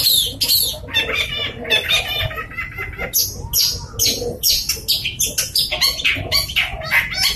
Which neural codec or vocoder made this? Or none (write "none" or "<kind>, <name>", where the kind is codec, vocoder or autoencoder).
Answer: none